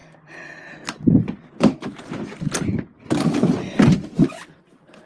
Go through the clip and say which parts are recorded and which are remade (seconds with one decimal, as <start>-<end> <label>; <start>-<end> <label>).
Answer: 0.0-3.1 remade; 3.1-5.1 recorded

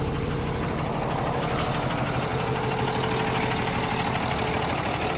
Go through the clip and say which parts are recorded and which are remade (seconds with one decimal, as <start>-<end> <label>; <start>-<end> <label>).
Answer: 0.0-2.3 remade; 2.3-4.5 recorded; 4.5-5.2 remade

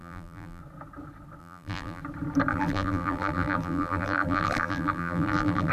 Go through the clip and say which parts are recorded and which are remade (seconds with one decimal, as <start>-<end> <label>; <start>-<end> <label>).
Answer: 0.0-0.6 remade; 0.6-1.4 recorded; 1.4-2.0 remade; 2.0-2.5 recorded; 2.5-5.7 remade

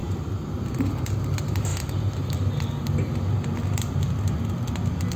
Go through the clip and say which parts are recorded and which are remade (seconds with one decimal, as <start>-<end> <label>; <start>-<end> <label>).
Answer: 0.0-5.2 recorded

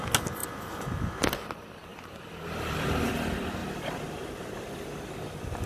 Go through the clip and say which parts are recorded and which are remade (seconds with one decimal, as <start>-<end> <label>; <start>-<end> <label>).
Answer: 0.0-1.9 recorded; 1.9-3.1 remade; 3.1-3.6 recorded; 3.6-5.1 remade; 5.1-5.7 recorded

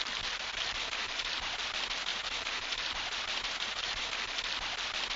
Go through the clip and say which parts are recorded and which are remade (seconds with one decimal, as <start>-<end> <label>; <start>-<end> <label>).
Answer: 0.0-1.0 recorded; 1.0-1.6 remade; 1.6-2.1 recorded; 2.1-4.1 remade; 4.1-5.2 recorded

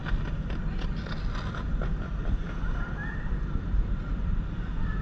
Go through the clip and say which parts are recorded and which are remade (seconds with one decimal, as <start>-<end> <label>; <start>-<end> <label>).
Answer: 0.0-5.0 recorded